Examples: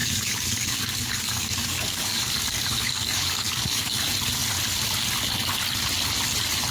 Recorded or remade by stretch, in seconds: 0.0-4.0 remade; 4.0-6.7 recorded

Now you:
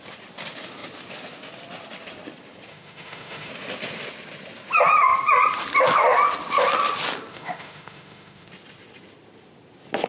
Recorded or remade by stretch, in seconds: 0.0-2.7 recorded; 2.7-3.5 remade; 3.5-7.3 recorded; 7.3-8.5 remade; 8.5-10.1 recorded

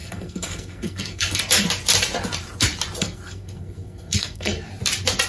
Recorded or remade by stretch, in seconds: 0.0-1.4 remade; 1.4-3.0 recorded; 3.0-4.7 remade; 4.7-5.3 recorded